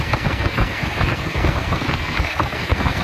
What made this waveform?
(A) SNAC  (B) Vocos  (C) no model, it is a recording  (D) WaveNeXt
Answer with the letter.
A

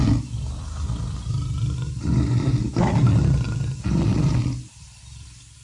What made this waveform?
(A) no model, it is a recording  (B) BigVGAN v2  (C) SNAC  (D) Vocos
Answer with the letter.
A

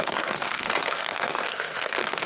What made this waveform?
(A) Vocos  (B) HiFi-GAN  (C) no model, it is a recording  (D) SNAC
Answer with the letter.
D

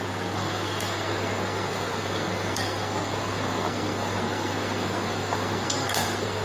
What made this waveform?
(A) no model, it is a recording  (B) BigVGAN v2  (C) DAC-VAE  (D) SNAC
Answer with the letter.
D